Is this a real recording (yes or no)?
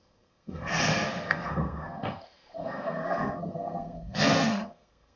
no